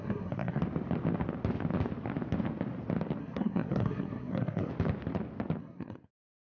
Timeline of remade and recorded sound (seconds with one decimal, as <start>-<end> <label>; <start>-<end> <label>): 0.0-0.6 remade; 0.6-3.2 recorded; 3.2-4.7 remade; 4.7-5.6 recorded; 5.6-6.4 remade

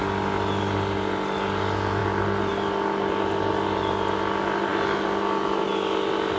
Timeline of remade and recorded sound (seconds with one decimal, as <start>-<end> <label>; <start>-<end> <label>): 0.0-6.4 recorded

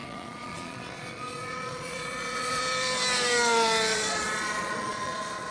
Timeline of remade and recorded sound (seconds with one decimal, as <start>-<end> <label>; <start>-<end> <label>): 0.0-2.6 remade; 2.6-3.9 recorded; 3.9-5.5 remade

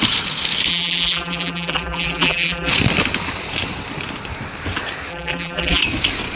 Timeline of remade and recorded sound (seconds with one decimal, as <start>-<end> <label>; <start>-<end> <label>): 0.0-0.7 recorded; 0.7-2.7 remade; 2.7-5.1 recorded; 5.1-5.8 remade; 5.8-6.4 recorded

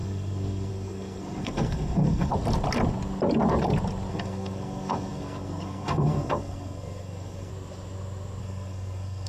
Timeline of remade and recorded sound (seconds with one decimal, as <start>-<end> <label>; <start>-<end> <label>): 0.0-2.3 remade; 2.3-4.1 recorded; 4.1-7.5 remade; 7.5-8.4 recorded; 8.4-9.3 remade

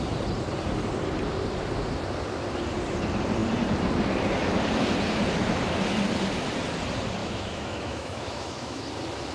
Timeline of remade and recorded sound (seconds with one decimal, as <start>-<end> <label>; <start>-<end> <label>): 0.0-7.2 recorded; 7.2-8.8 remade; 8.8-9.3 recorded